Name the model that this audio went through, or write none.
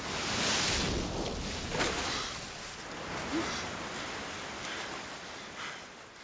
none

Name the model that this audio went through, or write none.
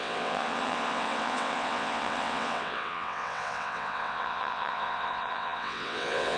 vocoder, WaveNeXt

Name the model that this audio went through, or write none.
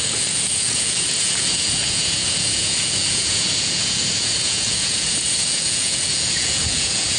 vocoder, Vocos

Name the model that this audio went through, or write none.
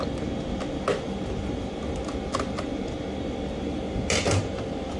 none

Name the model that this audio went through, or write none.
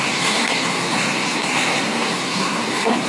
codec, SNAC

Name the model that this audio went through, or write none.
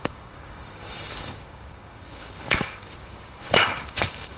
codec, DAC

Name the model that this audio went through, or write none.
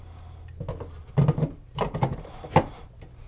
none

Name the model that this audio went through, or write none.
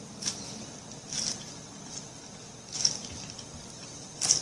none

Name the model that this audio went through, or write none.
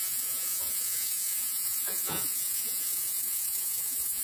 vocoder, Vocos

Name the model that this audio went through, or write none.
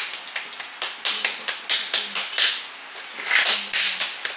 none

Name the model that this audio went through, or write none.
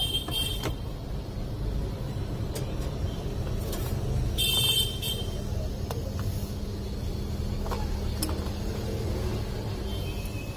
none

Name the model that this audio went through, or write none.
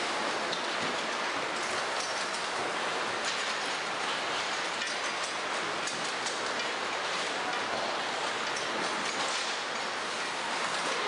none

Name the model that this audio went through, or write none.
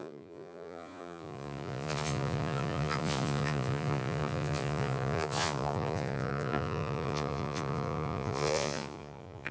vocoder, Vocos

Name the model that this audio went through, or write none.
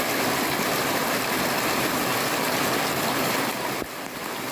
none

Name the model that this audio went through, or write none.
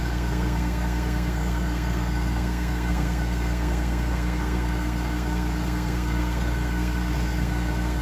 codec, SNAC